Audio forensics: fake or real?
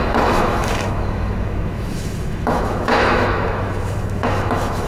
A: fake